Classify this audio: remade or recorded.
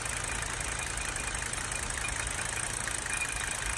recorded